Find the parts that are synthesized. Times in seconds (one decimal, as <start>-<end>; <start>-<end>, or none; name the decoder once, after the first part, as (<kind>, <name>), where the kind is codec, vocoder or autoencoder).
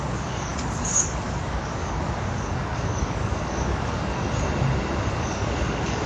0.0-4.1 (codec, DAC); 5.1-6.1